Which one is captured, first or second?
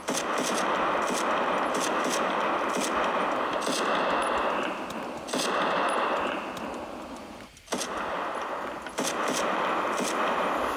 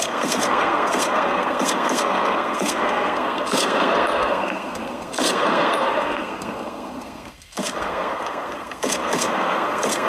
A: first